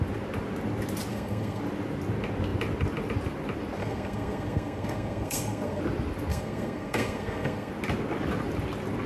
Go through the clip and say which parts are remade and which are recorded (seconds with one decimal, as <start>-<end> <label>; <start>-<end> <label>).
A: 0.0-1.1 recorded; 1.1-1.6 remade; 1.6-3.8 recorded; 3.8-5.8 remade; 5.8-6.3 recorded; 6.3-7.7 remade; 7.7-9.1 recorded

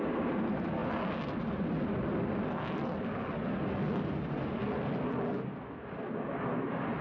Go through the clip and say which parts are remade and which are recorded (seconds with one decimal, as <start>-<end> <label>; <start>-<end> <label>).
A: 0.0-7.0 recorded

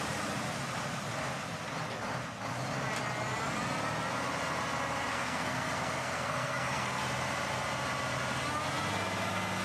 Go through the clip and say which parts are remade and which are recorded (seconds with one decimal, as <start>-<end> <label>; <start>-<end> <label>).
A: 0.0-5.1 recorded; 5.1-7.0 remade; 7.0-9.6 recorded

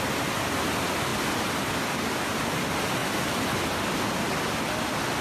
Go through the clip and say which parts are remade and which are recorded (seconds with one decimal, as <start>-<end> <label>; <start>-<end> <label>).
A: 0.0-5.2 recorded

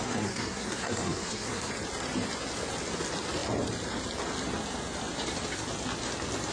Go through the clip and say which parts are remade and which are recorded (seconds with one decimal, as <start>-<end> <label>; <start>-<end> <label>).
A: 0.0-1.7 remade; 1.7-6.5 recorded